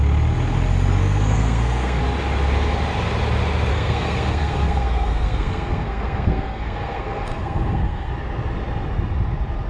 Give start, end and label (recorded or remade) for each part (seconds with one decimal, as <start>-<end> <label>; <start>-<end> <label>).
0.0-1.0 recorded; 1.0-2.0 remade; 2.0-3.7 recorded; 3.7-8.1 remade; 8.1-9.7 recorded